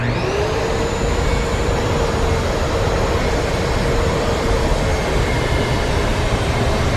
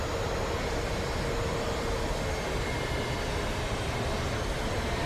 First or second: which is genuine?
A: second